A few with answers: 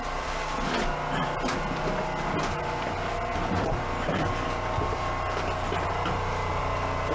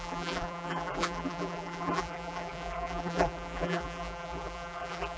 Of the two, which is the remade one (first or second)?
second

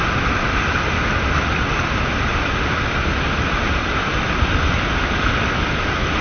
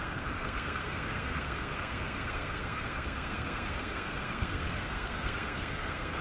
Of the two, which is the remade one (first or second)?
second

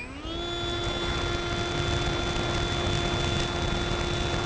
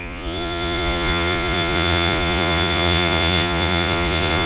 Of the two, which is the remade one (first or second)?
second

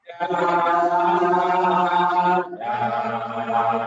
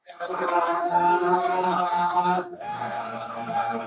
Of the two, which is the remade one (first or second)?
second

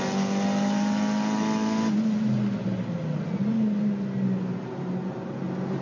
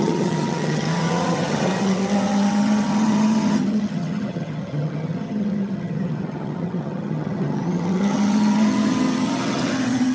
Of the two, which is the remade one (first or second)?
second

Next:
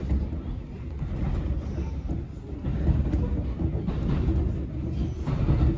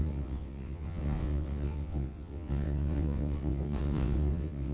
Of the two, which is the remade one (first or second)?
second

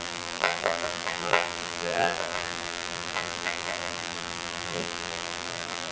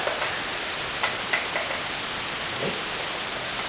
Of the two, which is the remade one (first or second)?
first